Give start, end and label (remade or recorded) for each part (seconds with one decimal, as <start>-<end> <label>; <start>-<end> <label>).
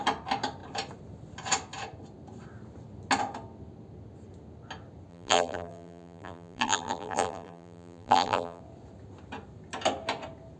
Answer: 0.0-5.1 recorded; 5.1-8.6 remade; 8.6-10.6 recorded